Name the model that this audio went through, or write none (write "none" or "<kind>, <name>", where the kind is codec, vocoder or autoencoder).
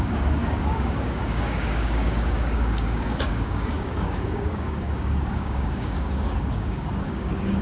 codec, DAC